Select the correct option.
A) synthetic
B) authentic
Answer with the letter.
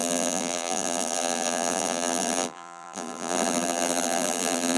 A